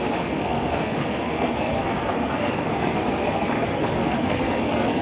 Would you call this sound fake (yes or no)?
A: yes